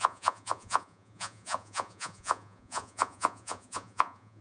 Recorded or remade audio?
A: remade